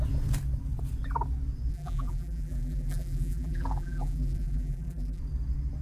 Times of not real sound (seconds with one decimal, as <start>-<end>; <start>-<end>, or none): 1.7-5.2